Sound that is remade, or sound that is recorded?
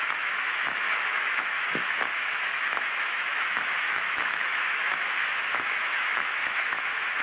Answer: remade